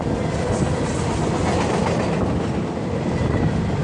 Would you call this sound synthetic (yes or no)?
no